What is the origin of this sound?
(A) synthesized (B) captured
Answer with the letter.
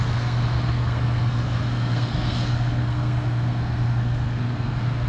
A